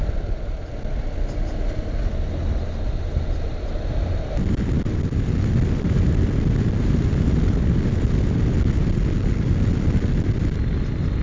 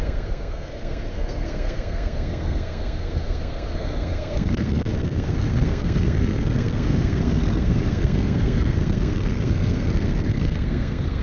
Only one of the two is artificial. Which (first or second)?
second